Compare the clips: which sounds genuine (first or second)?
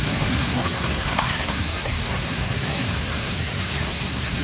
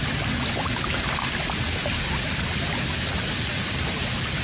second